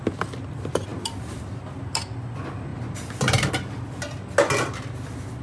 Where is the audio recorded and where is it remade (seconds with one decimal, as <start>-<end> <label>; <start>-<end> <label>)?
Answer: 0.0-0.9 recorded; 0.9-2.0 remade; 2.0-2.7 recorded; 2.7-3.5 remade; 3.5-5.4 recorded